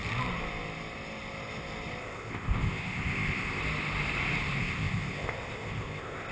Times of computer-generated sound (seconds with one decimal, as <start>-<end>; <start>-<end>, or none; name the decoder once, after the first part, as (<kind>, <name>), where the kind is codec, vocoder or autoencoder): 2.0-3.6 (codec, ZipCodec); 4.6-6.3